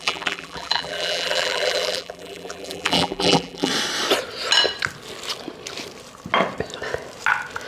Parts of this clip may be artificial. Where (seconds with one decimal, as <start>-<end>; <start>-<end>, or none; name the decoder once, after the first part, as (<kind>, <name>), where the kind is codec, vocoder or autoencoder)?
0.0-3.7 (vocoder, BigVGAN v2)